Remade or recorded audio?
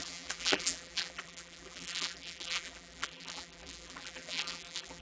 remade